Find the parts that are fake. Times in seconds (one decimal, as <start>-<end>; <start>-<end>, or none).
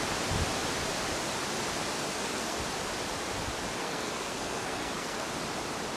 2.1-2.6; 3.8-5.3